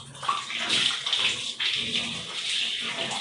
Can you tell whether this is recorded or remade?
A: recorded